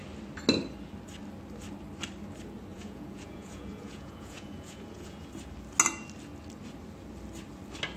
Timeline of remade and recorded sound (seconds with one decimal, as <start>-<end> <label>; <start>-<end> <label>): 0.0-2.7 recorded; 2.7-5.3 remade; 5.3-8.0 recorded